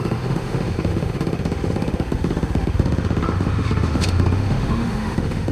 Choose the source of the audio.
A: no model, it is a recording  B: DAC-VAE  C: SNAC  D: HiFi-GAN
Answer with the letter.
B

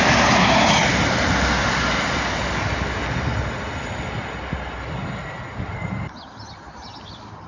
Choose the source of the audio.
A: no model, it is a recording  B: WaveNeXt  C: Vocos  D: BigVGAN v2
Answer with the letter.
A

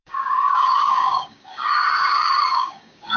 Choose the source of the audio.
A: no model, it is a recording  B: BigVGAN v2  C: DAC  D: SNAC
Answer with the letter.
C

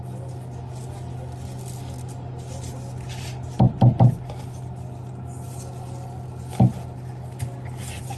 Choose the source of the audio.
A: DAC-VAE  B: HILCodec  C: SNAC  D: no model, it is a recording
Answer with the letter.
D